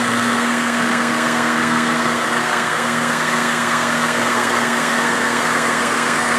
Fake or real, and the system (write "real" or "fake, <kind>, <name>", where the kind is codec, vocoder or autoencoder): fake, codec, SNAC